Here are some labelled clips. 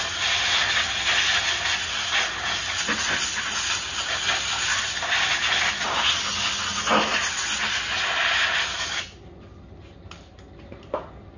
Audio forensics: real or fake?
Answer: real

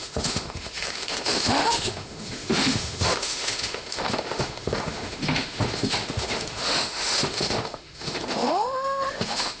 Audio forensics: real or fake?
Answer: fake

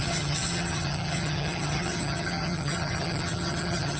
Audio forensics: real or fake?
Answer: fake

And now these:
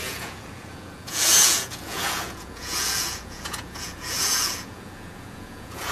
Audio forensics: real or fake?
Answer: fake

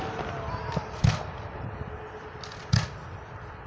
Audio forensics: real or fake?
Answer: real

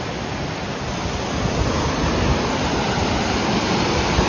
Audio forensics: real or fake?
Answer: real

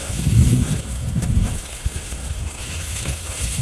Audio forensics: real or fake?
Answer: fake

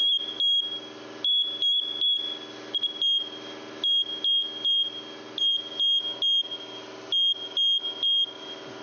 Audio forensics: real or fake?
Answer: real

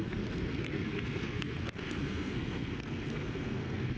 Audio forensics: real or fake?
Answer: fake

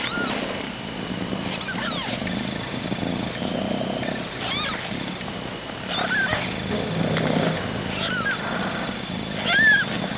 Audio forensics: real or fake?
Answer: real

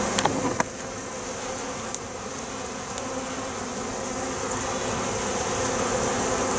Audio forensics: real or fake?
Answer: real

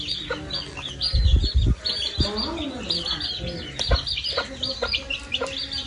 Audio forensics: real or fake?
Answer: real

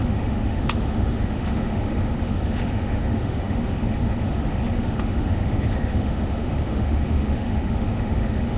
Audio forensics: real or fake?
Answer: fake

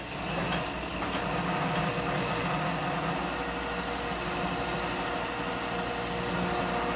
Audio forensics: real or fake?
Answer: real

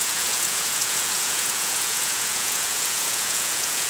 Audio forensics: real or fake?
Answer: fake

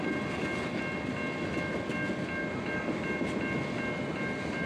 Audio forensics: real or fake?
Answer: real